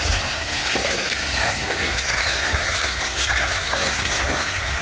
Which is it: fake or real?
fake